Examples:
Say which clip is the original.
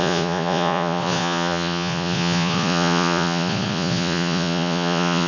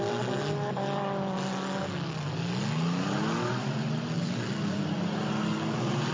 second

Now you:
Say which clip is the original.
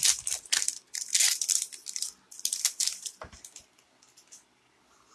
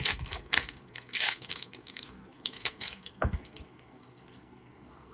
first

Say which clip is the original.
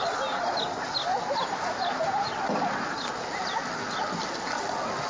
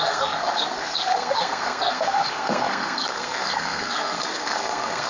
first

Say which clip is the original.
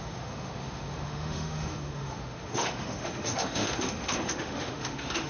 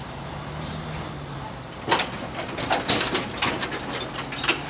second